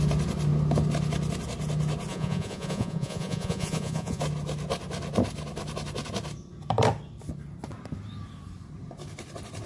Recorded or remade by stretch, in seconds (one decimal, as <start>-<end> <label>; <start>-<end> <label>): 0.0-2.1 recorded; 2.1-4.2 remade; 4.2-9.7 recorded

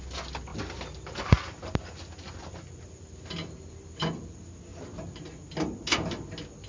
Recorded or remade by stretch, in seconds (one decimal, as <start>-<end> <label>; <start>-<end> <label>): 0.0-6.7 recorded

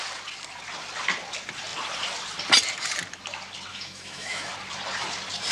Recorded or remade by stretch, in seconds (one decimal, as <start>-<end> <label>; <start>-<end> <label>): 0.0-3.7 recorded; 3.7-4.5 remade; 4.5-5.5 recorded

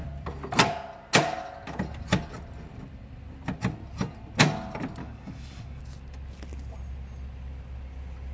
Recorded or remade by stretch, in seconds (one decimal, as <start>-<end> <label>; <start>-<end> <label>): 0.0-5.0 recorded; 5.0-5.8 remade; 5.8-8.3 recorded